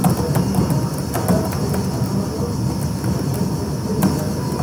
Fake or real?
real